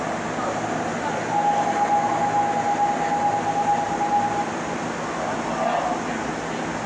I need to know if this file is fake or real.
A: real